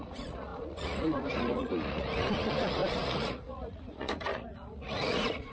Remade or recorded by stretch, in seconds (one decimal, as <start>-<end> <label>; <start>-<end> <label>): 0.0-5.5 remade